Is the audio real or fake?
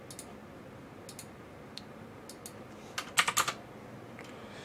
real